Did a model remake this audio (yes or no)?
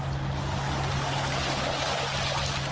no